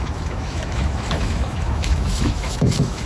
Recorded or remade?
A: remade